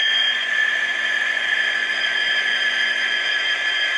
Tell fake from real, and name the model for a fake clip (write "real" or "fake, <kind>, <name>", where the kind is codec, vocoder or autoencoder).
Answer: fake, vocoder, Vocos